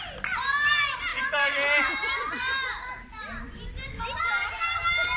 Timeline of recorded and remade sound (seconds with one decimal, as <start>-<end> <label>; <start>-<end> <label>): 0.0-5.2 recorded